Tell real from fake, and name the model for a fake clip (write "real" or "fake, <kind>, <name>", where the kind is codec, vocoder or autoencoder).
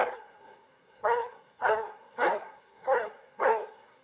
fake, codec, SNAC